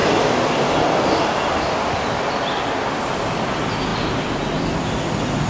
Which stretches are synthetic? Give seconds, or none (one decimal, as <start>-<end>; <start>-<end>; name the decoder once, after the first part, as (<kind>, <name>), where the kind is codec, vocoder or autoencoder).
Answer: none